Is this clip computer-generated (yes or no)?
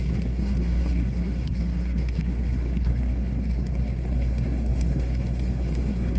yes